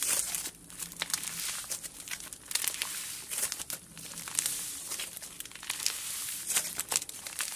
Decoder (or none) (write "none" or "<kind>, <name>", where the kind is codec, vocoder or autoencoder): vocoder, BigVGAN v2